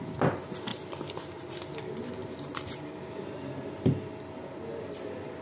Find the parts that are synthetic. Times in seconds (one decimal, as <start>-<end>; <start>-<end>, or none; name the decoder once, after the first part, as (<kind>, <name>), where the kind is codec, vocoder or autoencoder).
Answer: 0.7-1.5 (vocoder, BigVGAN v2); 2.2-3.1